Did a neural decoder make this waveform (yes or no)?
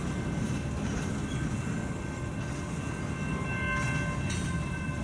no